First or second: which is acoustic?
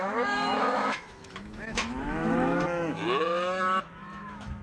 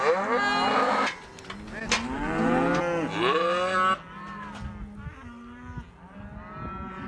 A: second